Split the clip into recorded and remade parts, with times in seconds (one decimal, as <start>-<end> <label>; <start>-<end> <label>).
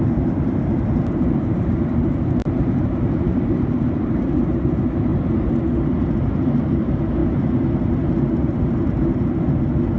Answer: 0.0-5.1 remade; 5.1-5.6 recorded; 5.6-7.2 remade; 7.2-10.0 recorded